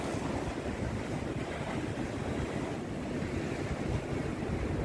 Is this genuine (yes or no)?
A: yes